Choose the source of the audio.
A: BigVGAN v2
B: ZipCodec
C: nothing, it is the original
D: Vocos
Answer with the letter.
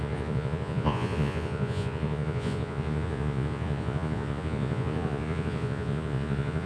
D